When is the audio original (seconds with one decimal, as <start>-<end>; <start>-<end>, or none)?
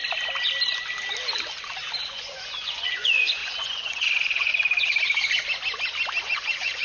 0.0-2.0; 4.5-6.2